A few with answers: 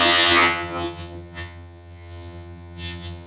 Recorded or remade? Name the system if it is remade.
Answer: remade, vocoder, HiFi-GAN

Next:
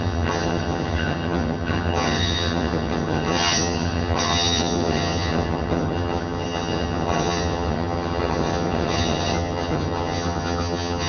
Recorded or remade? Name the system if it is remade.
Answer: remade, vocoder, HiFi-GAN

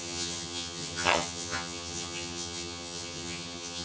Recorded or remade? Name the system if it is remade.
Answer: remade, vocoder, HiFi-GAN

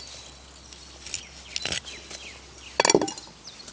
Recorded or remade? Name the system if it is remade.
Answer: recorded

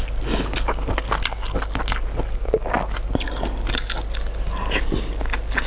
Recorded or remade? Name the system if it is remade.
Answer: recorded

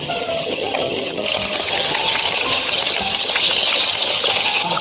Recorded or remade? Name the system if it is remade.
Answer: remade, vocoder, HiFi-GAN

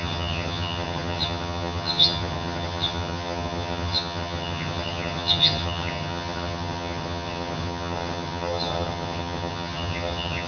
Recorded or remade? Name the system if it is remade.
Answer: remade, vocoder, HiFi-GAN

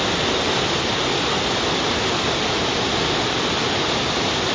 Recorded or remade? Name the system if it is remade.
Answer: recorded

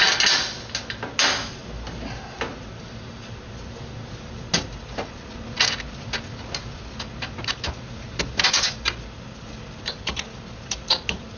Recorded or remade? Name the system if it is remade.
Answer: recorded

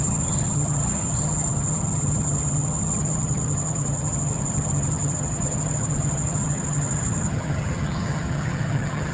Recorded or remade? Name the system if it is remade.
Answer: remade, vocoder, HiFi-GAN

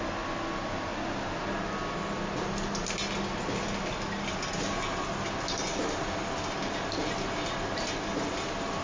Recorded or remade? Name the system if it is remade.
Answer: recorded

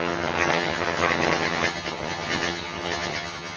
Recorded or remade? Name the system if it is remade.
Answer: remade, vocoder, HiFi-GAN